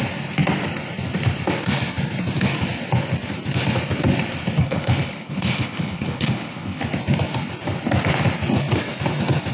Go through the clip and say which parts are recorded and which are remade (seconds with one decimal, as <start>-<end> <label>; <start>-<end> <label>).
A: 0.0-4.6 recorded; 4.6-6.8 remade; 6.8-9.5 recorded